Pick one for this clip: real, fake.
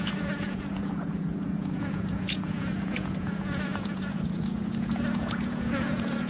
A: fake